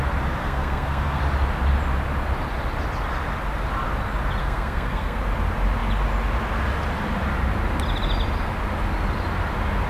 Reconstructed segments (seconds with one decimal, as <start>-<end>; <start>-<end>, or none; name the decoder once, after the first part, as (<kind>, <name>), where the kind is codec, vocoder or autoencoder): 0.4-1.2 (codec, SNAC); 4.4-5.2